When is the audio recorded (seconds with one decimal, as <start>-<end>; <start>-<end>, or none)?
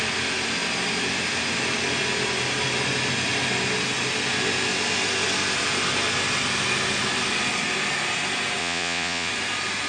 0.0-8.6; 9.3-9.9